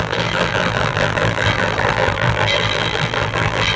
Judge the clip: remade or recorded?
remade